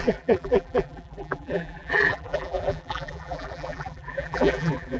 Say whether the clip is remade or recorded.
remade